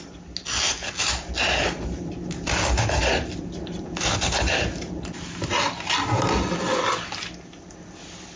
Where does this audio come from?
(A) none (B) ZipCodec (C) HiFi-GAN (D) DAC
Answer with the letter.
A